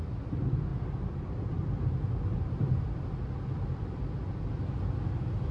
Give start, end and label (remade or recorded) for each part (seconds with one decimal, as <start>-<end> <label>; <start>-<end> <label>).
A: 0.0-5.5 recorded